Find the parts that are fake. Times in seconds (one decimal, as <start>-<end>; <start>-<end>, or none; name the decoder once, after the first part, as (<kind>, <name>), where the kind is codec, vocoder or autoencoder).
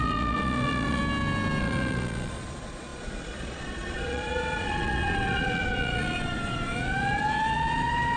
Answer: 0.0-1.0 (vocoder, Vocos); 1.6-8.2